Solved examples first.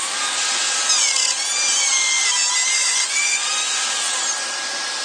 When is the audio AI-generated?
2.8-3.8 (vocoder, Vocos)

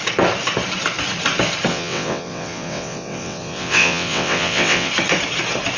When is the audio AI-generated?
1.7-4.9 (vocoder, WaveNeXt)

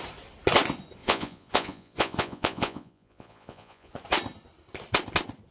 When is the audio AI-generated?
1.0-3.9 (vocoder, Vocos)

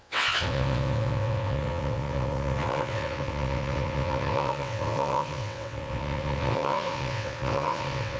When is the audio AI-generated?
0.0-8.2 (vocoder, WaveNeXt)

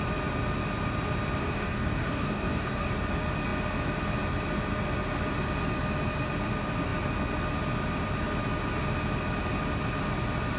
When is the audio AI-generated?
1.4-2.9 (codec, DAC)

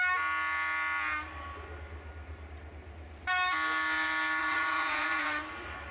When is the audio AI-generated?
4.4-5.4 (vocoder, Vocos)

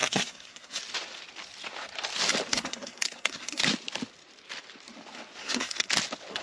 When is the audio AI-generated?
0.0-0.8 (codec, SNAC); 2.5-3.6; 5.4-5.9

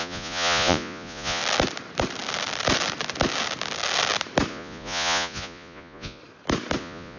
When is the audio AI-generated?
0.0-1.4 (vocoder, Vocos); 4.5-6.2; 6.8-7.2